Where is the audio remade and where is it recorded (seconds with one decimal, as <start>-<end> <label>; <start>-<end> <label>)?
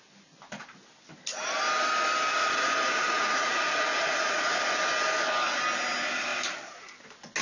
0.0-2.3 recorded; 2.3-4.8 remade; 4.8-7.4 recorded